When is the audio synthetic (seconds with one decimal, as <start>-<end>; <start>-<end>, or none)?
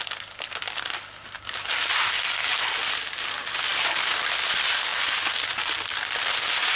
none